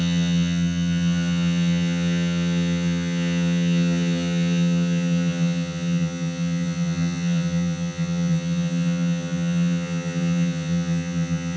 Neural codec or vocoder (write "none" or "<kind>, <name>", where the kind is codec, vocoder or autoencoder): vocoder, HiFi-GAN